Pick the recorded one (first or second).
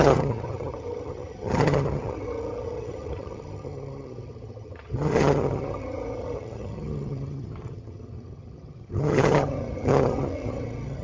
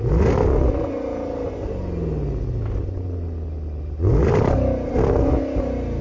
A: second